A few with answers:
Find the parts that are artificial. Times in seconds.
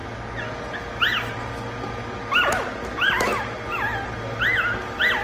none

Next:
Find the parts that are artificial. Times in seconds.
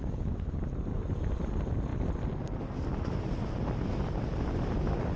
none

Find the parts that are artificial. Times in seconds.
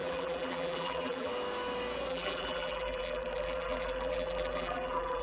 0.0-1.3 (vocoder, BigVGAN v2); 2.1-5.2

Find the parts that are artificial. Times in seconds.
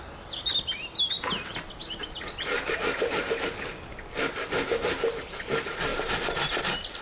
0.4-1.0 (vocoder, BigVGAN v2); 1.8-3.2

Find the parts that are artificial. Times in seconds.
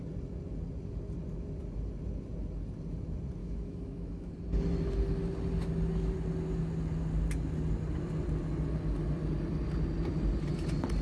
3.4-4.3 (autoencoder, DAC-VAE)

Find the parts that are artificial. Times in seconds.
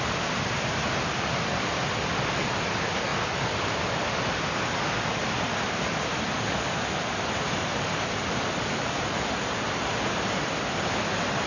none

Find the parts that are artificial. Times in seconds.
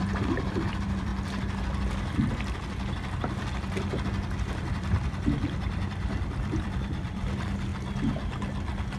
0.0-1.1 (vocoder, BigVGAN v2); 4.4-7.7